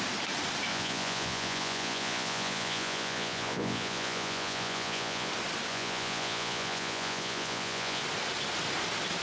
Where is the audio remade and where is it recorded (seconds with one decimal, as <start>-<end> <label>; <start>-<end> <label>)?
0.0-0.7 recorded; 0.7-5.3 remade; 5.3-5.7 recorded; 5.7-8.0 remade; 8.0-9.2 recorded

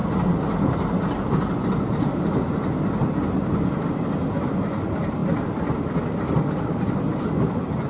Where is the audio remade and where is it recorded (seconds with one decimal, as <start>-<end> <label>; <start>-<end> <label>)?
0.0-7.9 recorded

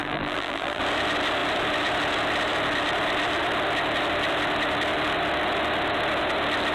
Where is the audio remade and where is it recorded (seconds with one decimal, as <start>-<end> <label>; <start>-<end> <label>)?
0.0-0.8 remade; 0.8-6.7 recorded